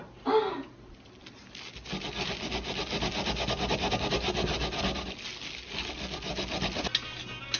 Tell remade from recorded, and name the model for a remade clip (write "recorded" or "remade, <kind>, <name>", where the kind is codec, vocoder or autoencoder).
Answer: recorded